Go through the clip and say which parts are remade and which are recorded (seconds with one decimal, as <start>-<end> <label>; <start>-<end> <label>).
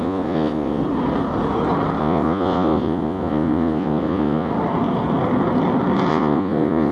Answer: 0.0-0.8 remade; 0.8-2.0 recorded; 2.0-4.5 remade; 4.5-6.1 recorded; 6.1-6.9 remade